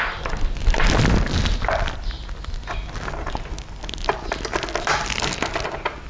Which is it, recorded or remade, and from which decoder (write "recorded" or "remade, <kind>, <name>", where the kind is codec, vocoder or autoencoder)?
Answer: recorded